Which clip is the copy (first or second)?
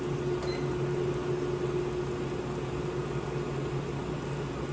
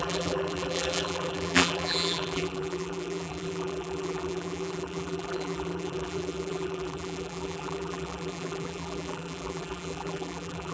second